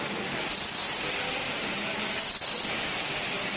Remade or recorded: recorded